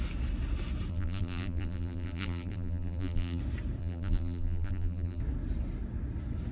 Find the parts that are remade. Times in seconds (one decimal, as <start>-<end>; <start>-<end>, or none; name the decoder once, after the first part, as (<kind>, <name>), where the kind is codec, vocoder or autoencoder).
0.9-3.4 (vocoder, BigVGAN v2); 3.8-5.2